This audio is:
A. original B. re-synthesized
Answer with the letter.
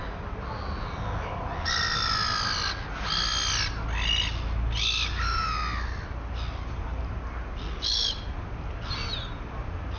A